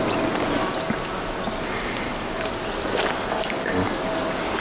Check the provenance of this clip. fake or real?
real